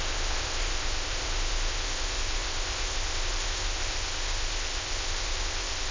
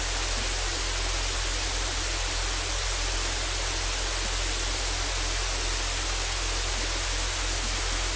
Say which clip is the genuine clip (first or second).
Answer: second